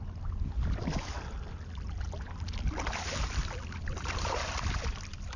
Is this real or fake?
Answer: real